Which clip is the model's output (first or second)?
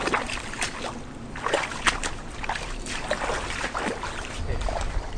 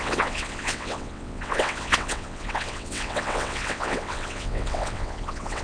second